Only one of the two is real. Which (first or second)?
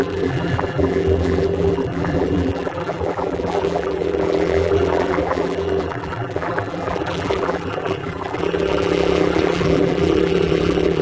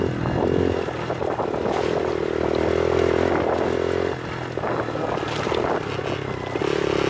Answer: second